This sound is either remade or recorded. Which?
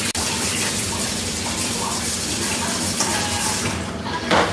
remade